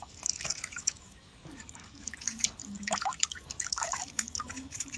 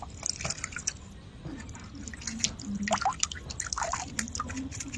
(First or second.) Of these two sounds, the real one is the second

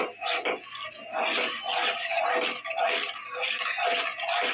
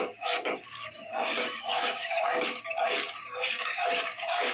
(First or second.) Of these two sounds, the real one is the first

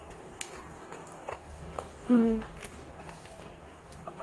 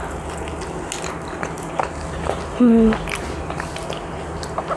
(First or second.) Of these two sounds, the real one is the second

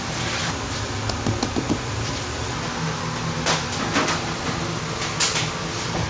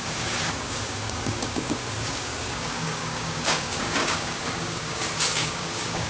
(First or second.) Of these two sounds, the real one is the first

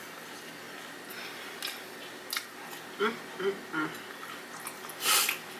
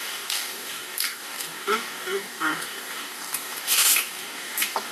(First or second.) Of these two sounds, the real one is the first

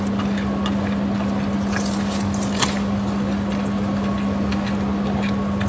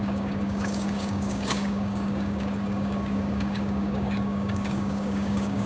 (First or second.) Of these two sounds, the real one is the first